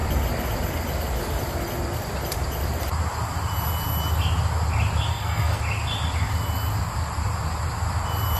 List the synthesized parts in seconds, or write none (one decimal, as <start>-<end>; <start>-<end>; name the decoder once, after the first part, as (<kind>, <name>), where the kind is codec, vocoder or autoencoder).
5.1-5.6 (codec, SNAC)